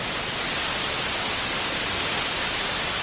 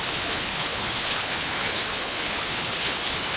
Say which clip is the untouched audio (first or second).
first